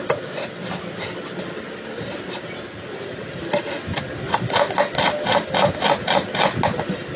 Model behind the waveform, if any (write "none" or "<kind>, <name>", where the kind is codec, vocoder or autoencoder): none